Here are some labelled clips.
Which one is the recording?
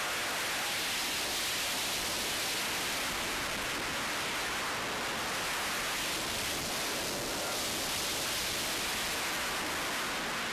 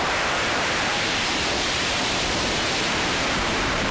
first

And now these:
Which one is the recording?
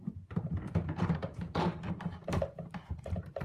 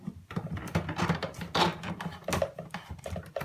second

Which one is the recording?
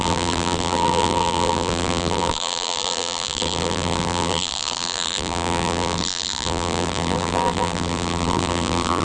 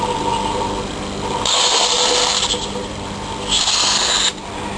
second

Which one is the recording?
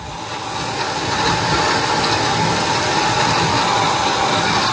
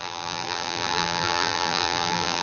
first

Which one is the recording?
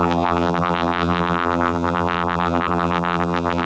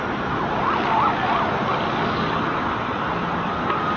second